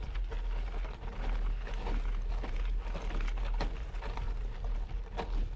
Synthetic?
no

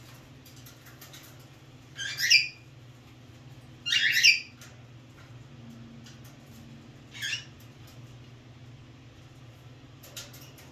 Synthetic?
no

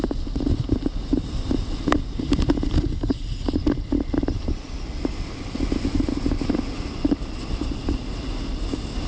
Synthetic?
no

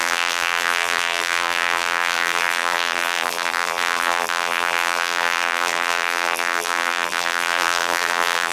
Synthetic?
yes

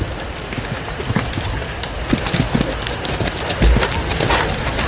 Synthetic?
no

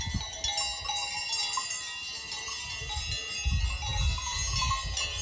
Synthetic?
no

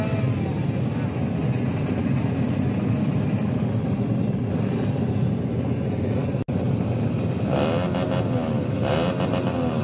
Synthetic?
no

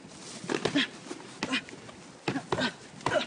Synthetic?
no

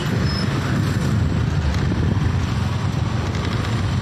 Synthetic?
no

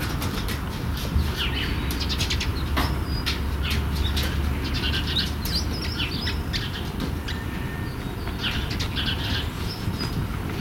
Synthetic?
no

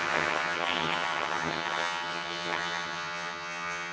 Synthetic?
yes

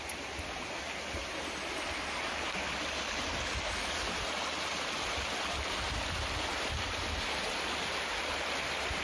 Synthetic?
no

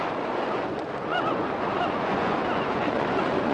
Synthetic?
yes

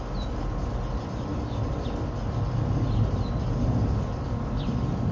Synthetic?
no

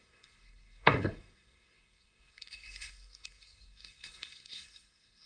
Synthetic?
yes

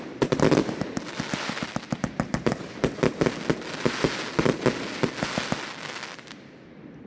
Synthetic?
no